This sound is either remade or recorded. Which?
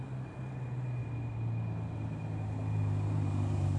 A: recorded